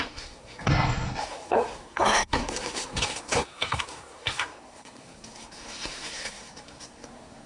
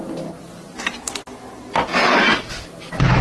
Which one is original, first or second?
second